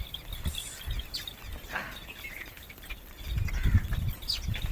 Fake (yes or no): no